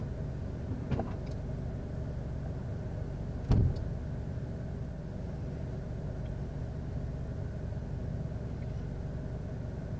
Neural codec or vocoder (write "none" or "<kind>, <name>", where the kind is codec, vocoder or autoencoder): none